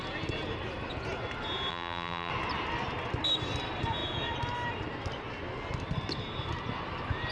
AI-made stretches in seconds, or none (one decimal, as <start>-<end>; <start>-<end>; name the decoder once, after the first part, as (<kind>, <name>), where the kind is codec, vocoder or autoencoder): 1.7-2.3 (vocoder, BigVGAN v2)